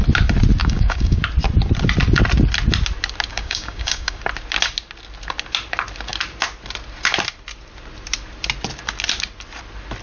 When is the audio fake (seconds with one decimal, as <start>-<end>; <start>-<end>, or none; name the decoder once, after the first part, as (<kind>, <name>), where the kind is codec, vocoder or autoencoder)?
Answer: 0.6-1.2 (codec, DAC); 3.3-4.2